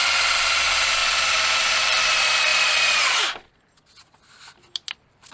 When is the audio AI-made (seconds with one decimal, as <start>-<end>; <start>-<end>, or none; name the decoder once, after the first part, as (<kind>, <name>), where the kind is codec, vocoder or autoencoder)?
1.0-2.0 (vocoder, BigVGAN v2); 2.5-3.1